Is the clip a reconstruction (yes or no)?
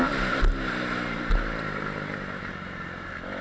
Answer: no